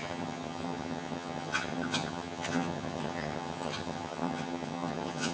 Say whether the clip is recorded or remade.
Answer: remade